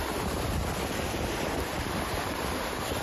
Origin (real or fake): fake